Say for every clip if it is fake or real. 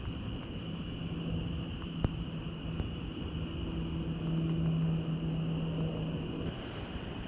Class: real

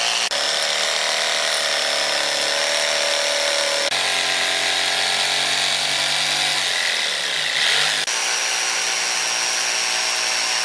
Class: real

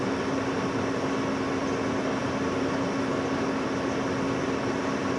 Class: real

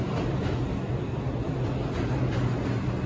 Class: real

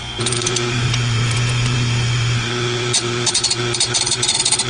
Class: fake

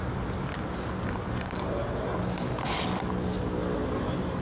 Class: real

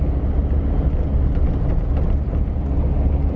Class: real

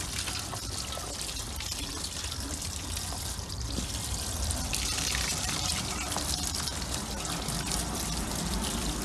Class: real